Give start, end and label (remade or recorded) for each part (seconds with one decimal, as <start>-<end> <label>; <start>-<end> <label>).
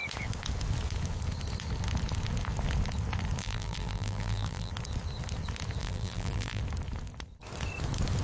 0.0-3.4 recorded; 3.4-4.7 remade; 4.7-5.8 recorded; 5.8-6.6 remade; 6.6-8.2 recorded